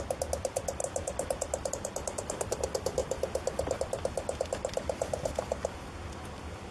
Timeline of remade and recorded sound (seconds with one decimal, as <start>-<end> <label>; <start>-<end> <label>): 0.0-6.7 recorded